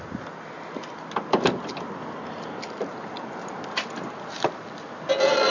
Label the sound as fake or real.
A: real